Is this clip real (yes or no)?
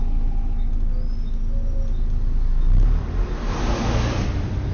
yes